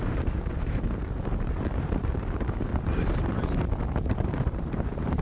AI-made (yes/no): yes